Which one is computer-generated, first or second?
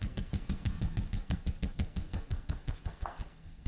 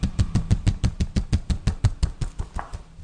first